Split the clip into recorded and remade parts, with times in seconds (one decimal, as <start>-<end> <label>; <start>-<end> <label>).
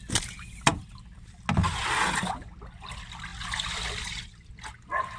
0.0-0.7 recorded; 0.7-1.4 remade; 1.4-5.2 recorded